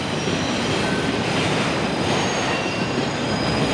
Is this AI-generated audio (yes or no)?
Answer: no